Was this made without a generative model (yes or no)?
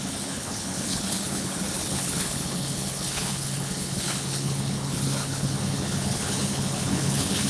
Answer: no